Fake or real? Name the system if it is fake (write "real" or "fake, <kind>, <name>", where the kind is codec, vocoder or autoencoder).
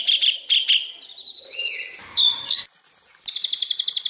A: real